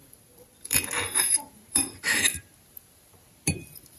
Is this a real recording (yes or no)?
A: no